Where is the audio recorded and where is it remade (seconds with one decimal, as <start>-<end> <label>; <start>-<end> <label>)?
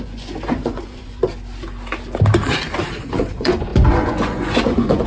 0.0-1.2 remade; 1.2-2.9 recorded; 2.9-5.1 remade